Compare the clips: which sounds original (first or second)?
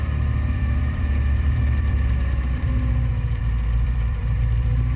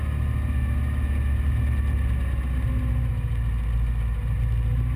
second